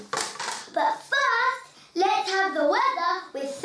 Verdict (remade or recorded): recorded